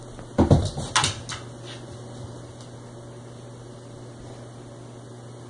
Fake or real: real